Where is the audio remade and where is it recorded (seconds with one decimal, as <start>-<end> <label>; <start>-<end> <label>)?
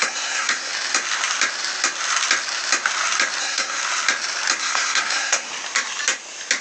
0.0-0.7 remade; 0.7-3.4 recorded; 3.4-3.8 remade; 3.8-4.6 recorded; 4.6-5.5 remade; 5.5-6.6 recorded